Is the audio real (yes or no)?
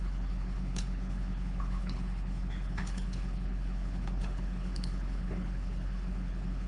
no